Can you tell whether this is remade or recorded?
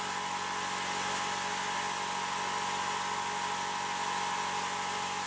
recorded